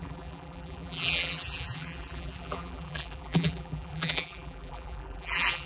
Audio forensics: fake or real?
fake